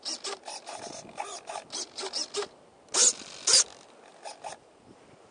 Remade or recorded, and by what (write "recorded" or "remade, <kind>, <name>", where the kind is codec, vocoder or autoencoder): recorded